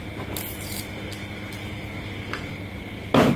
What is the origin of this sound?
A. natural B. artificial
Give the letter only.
A